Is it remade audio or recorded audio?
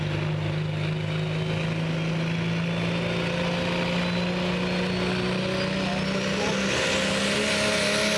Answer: recorded